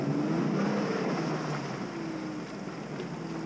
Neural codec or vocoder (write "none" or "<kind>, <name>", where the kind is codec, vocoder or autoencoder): none